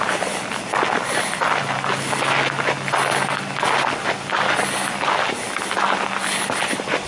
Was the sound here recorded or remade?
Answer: recorded